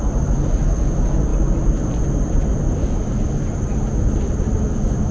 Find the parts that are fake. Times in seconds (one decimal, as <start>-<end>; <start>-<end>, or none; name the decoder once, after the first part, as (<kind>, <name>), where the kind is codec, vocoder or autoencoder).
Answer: none